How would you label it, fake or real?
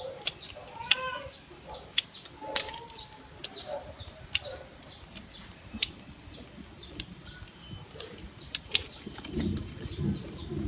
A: real